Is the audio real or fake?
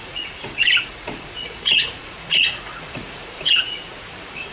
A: fake